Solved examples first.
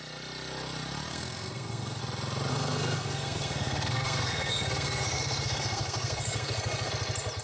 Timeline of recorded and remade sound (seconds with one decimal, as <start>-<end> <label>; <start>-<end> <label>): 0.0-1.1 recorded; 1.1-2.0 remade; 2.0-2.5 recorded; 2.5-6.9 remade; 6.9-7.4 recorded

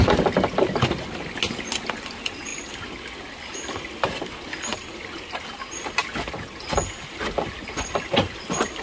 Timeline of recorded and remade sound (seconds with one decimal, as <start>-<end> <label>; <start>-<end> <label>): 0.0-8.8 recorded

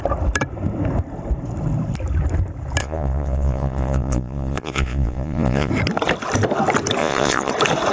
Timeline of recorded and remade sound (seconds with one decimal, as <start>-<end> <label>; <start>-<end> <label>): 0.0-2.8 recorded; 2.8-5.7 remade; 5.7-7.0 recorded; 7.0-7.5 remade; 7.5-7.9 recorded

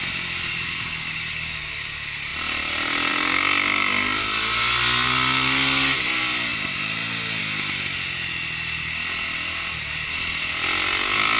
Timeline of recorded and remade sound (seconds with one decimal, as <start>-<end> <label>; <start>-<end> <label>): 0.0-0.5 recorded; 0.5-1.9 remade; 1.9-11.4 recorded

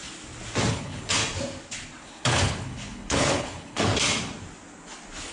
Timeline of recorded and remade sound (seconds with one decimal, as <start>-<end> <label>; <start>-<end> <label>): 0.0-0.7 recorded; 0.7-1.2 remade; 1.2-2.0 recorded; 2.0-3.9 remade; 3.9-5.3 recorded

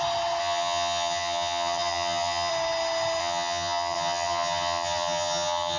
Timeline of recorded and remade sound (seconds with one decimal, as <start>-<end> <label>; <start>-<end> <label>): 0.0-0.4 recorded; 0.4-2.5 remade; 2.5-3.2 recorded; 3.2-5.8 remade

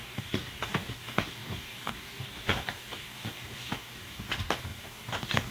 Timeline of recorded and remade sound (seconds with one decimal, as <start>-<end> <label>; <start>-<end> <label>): 0.0-5.5 remade

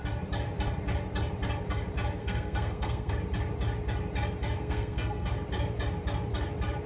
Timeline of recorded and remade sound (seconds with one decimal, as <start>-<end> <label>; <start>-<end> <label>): 0.0-2.2 recorded; 2.2-3.1 remade; 3.1-4.6 recorded; 4.6-5.3 remade; 5.3-6.9 recorded